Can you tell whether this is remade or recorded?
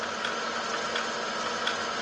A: recorded